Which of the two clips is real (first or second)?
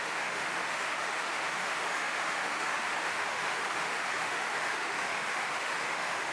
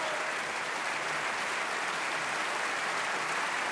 second